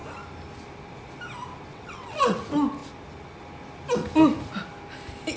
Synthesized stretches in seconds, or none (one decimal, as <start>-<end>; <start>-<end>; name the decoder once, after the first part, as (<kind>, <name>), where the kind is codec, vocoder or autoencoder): 1.7-2.4 (vocoder, WaveNeXt)